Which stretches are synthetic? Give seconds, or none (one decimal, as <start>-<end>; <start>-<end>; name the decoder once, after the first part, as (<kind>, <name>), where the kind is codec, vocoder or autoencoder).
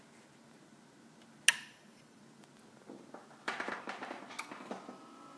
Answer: 1.6-2.2 (vocoder, BigVGAN v2)